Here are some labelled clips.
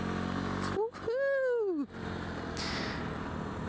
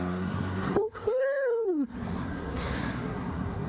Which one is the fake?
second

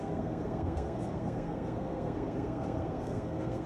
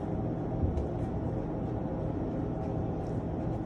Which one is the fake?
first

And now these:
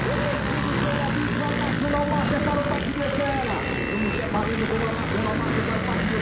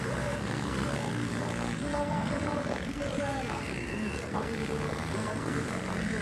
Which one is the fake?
second